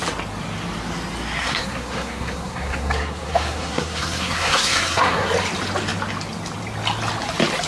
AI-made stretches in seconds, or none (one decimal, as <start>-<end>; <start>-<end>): 1.4-5.3